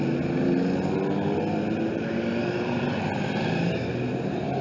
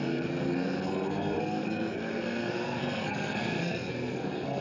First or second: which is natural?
first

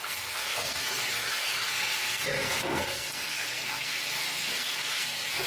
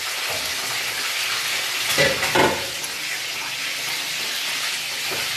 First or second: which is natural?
second